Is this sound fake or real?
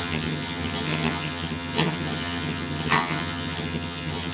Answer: fake